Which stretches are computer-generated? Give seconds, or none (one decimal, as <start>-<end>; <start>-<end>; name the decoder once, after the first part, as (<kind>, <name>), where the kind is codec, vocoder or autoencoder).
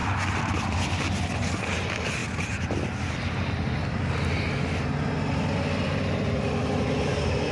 none